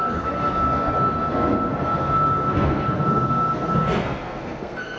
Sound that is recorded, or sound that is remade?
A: remade